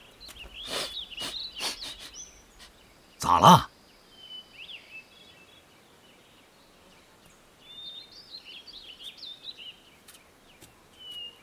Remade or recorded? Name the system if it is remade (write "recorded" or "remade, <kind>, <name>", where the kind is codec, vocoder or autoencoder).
recorded